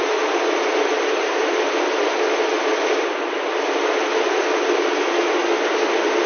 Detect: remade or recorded recorded